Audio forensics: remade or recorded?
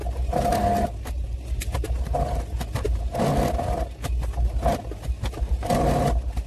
recorded